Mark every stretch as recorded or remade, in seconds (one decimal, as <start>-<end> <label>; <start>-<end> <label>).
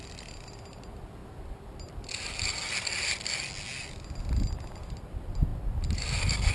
0.0-1.2 remade; 1.2-3.9 recorded; 3.9-5.5 remade; 5.5-6.5 recorded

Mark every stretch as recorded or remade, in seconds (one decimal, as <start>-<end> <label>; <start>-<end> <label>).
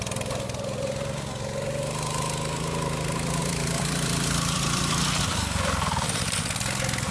0.0-3.4 recorded; 3.4-5.2 remade; 5.2-7.1 recorded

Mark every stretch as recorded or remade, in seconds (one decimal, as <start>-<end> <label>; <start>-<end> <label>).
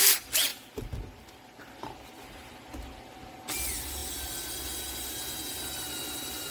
0.0-6.5 recorded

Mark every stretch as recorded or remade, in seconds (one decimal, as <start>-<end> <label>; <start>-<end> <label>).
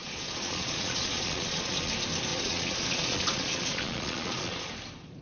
0.0-1.9 remade; 1.9-2.3 recorded; 2.3-4.7 remade; 4.7-5.2 recorded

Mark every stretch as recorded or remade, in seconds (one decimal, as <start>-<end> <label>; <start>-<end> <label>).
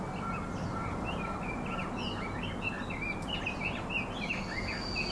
0.0-5.1 recorded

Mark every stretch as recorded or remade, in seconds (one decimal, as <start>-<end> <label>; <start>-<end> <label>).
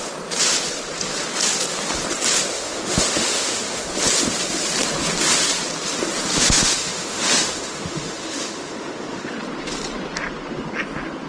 0.0-2.5 recorded; 2.5-3.9 remade; 3.9-6.4 recorded; 6.4-9.3 remade; 9.3-11.3 recorded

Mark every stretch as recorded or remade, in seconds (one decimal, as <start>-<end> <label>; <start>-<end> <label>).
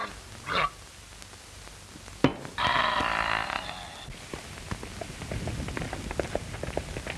0.0-7.2 recorded